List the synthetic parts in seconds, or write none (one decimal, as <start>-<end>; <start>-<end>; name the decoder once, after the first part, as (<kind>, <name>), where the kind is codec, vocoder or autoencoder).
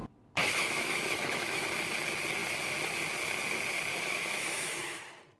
0.4-1.7 (autoencoder, DAC-VAE); 3.9-5.0